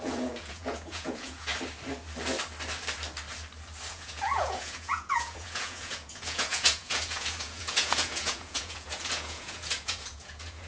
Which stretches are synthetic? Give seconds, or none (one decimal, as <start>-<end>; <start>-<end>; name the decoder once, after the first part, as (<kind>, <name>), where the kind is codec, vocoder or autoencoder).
0.0-1.5 (vocoder, Vocos); 3.9-10.7